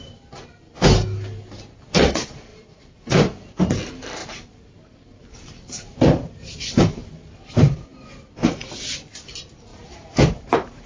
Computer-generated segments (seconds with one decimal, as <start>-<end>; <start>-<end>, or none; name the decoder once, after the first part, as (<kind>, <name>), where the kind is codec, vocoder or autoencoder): 4.2-7.5 (vocoder, BigVGAN v2); 9.7-10.9